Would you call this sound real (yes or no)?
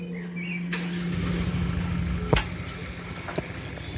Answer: yes